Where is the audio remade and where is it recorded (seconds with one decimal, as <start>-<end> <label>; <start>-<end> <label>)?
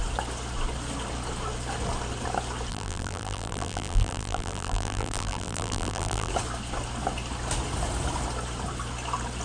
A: 0.0-2.7 recorded; 2.7-6.3 remade; 6.3-9.4 recorded